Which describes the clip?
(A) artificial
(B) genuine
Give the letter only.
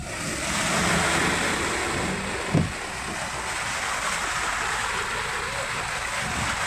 B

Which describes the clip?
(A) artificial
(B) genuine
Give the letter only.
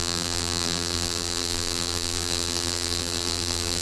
A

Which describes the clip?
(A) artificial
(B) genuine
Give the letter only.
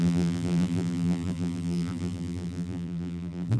A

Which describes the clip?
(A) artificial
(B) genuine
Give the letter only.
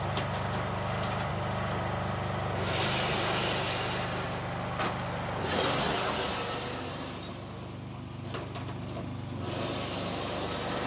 B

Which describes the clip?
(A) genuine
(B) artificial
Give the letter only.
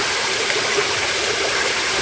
B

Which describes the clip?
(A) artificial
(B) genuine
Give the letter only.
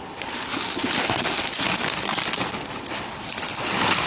B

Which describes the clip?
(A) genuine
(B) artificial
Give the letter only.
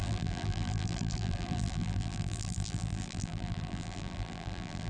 B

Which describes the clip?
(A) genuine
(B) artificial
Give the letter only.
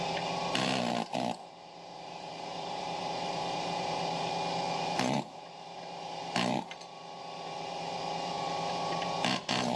B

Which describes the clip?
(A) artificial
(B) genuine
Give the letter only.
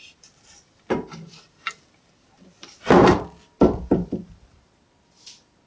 A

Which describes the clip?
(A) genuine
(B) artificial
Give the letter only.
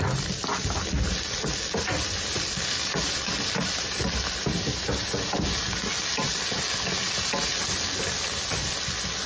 A